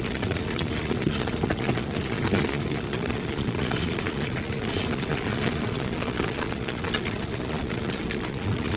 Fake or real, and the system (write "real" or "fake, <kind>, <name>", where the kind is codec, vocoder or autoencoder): fake, vocoder, Vocos